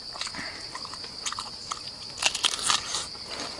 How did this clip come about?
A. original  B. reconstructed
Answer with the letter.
A